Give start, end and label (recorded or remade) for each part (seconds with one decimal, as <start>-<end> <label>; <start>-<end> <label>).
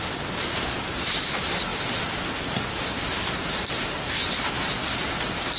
0.0-5.6 recorded